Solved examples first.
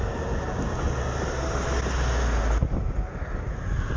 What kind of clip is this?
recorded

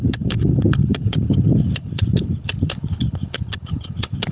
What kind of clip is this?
remade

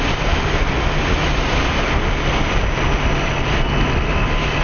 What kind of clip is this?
recorded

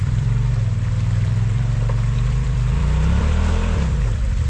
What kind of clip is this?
remade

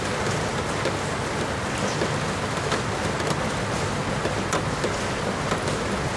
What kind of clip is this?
recorded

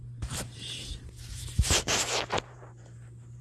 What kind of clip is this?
remade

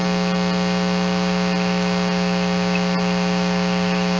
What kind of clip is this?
recorded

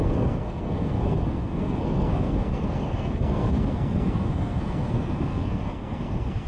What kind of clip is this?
remade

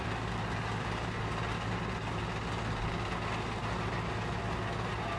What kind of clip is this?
recorded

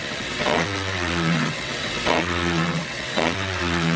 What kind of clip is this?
remade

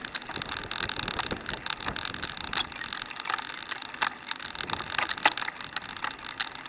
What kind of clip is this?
recorded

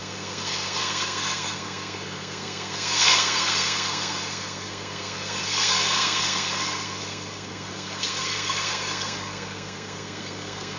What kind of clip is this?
remade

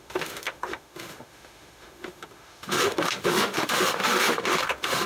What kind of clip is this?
remade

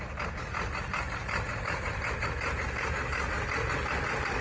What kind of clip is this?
recorded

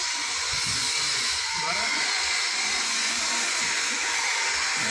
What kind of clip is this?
remade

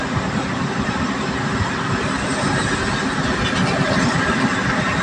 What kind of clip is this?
recorded